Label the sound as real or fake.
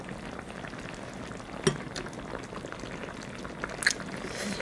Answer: real